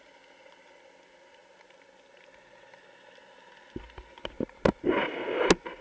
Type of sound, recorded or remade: recorded